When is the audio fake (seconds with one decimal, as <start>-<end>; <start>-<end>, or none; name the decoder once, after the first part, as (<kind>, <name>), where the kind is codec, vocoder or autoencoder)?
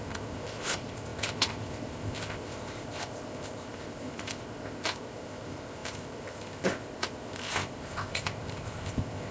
0.0-9.3 (codec, ZipCodec)